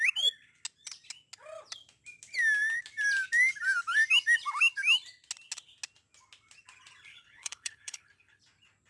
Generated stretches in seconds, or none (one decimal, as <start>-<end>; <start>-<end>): 7.1-8.4